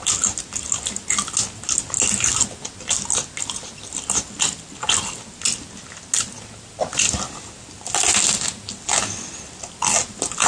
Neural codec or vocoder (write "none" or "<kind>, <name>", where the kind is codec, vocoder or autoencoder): none